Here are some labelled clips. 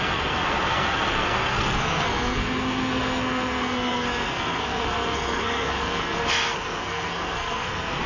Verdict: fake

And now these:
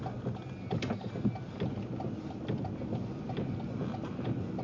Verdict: real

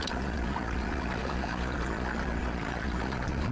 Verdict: fake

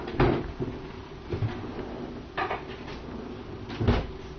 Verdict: real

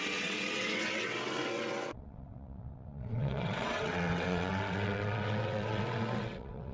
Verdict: fake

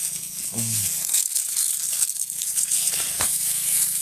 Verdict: fake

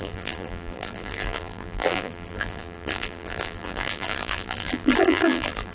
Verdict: fake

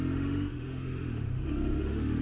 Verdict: fake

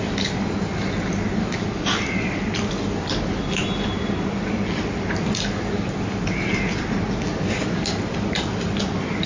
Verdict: real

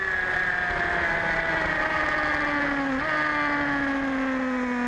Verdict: real